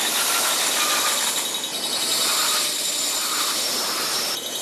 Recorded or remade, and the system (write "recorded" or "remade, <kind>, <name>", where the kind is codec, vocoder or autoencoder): recorded